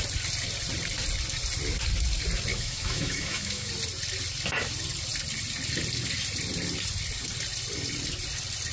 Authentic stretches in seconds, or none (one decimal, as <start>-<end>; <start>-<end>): 0.0-2.5; 3.7-8.7